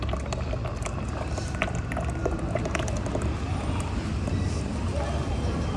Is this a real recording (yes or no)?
yes